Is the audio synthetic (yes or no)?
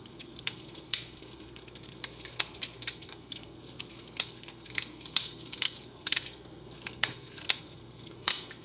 yes